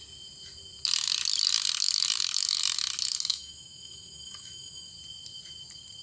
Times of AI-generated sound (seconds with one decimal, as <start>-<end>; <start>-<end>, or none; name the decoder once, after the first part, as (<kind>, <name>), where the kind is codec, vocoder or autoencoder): 3.3-4.9 (autoencoder, DAC-VAE)